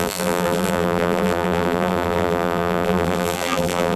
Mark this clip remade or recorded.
remade